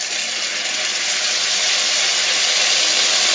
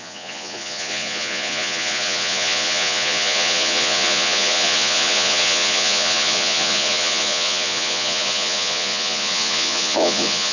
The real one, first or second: first